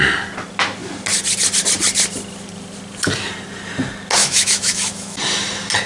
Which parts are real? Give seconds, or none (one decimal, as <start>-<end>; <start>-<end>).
0.0-4.2; 5.2-5.9